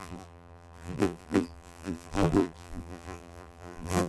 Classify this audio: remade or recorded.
remade